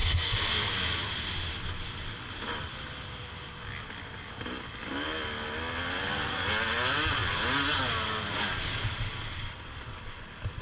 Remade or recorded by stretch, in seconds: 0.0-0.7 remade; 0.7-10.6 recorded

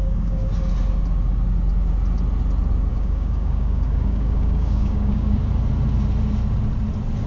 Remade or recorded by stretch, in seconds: 0.0-0.5 remade; 0.5-2.9 recorded; 2.9-5.4 remade; 5.4-7.3 recorded

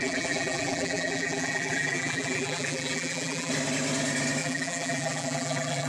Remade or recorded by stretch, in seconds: 0.0-3.5 remade; 3.5-4.4 recorded; 4.4-5.9 remade

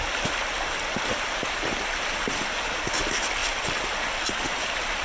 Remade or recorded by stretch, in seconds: 0.0-5.0 recorded

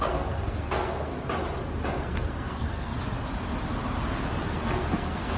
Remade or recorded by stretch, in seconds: 0.0-1.1 remade; 1.1-2.0 recorded; 2.0-2.9 remade; 2.9-4.4 recorded; 4.4-5.4 remade

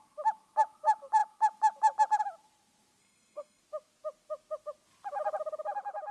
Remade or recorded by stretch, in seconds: 0.0-3.0 recorded; 3.0-3.6 remade; 3.6-6.1 recorded

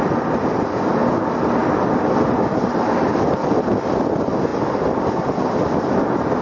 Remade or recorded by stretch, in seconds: 0.0-6.4 recorded